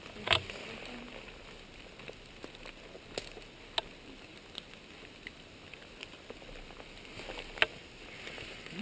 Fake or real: real